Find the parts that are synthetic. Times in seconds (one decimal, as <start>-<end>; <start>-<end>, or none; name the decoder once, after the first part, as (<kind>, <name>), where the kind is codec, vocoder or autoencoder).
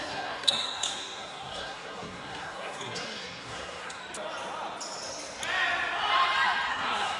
0.0-4.0 (codec, SNAC); 6.7-7.2